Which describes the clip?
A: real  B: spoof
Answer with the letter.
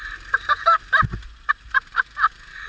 A